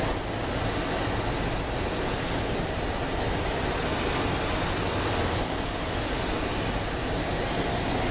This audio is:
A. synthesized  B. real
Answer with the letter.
B